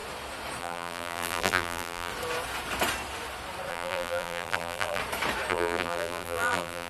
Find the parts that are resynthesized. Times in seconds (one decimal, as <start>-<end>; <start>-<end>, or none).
0.6-2.1; 3.7-5.0; 5.5-6.9